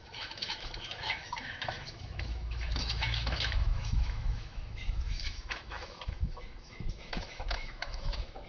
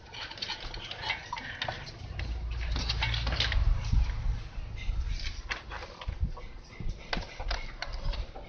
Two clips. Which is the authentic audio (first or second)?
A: second